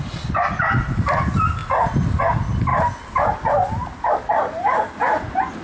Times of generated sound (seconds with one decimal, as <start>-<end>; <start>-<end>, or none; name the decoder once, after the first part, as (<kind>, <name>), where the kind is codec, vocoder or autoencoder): none